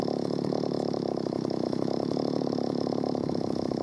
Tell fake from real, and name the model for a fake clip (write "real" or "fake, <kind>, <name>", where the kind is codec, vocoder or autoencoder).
fake, autoencoder, DAC-VAE